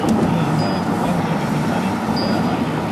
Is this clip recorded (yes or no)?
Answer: yes